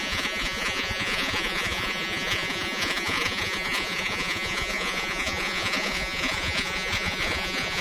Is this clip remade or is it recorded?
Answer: remade